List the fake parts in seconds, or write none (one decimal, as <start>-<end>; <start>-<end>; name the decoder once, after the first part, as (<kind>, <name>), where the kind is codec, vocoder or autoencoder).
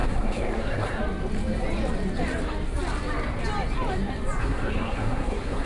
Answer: 0.0-1.0 (codec, SNAC); 4.4-5.7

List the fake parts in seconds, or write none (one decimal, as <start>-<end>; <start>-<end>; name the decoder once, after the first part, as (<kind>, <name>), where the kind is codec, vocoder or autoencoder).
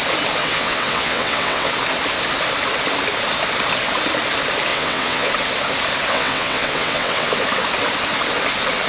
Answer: 0.4-1.7 (vocoder, WaveNeXt); 4.7-5.3; 6.1-7.3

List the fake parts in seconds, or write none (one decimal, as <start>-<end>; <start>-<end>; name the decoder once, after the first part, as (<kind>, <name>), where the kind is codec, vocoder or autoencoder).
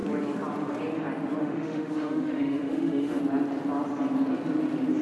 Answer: 1.4-3.2 (autoencoder, DAC-VAE)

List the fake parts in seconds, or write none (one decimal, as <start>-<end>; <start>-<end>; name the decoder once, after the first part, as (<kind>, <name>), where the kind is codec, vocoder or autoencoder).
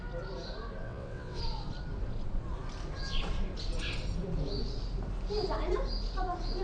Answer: 0.8-1.4 (vocoder, WaveNeXt)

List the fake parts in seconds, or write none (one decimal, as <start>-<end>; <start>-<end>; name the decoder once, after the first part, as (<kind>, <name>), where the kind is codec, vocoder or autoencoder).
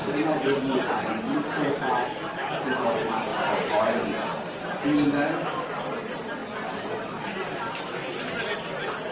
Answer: 0.0-2.7 (vocoder, BigVGAN v2); 3.3-3.8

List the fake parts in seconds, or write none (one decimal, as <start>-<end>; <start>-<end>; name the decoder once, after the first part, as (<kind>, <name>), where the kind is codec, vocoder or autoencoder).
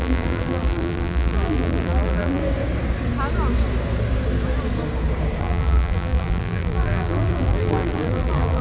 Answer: 0.0-2.4 (vocoder, BigVGAN v2); 5.4-8.6